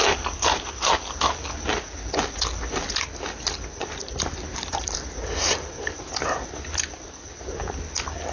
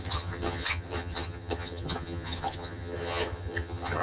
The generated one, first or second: second